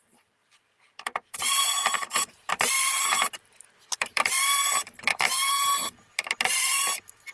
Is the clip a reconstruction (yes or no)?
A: yes